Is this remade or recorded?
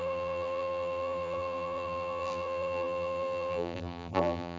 remade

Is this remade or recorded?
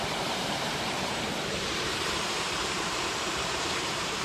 remade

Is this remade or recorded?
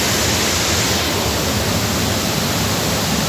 recorded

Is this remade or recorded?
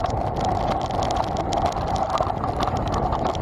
recorded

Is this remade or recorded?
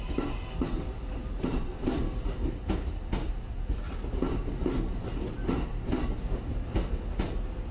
recorded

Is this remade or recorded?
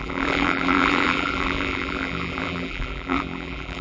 remade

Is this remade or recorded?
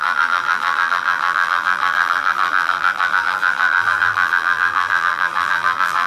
remade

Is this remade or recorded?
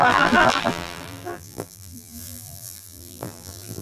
remade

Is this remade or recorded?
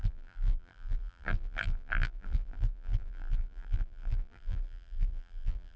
remade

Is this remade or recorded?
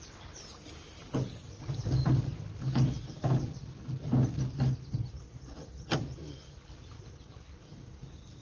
recorded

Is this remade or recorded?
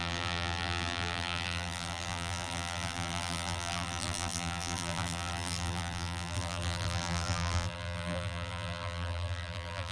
remade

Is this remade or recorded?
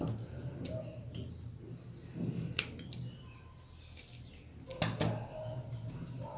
recorded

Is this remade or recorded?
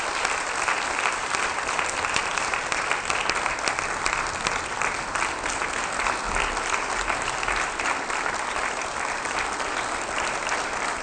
recorded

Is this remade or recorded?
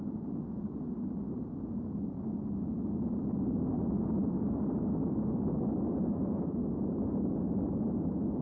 recorded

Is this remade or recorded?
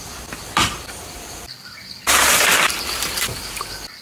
remade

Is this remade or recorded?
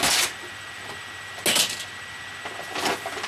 recorded